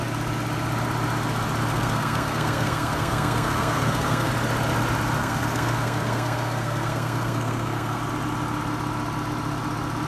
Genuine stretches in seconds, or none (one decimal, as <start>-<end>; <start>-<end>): 0.0-1.7; 4.3-5.2; 8.0-10.1